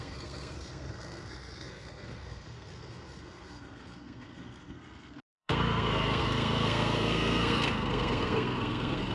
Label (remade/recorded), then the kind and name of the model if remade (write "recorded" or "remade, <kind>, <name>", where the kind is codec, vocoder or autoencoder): remade, codec, SNAC